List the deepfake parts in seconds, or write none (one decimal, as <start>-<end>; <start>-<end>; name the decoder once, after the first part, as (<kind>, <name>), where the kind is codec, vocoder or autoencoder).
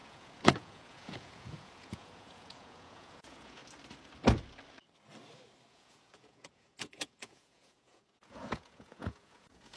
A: 0.0-3.6 (vocoder, Vocos); 5.7-9.8